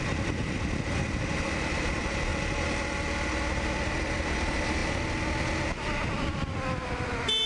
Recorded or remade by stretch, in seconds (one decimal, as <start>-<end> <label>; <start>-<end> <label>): 0.0-2.3 remade; 2.3-3.9 recorded; 3.9-4.8 remade; 4.8-6.9 recorded; 6.9-7.5 remade